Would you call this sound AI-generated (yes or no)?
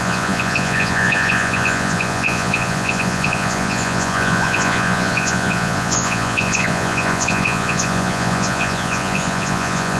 yes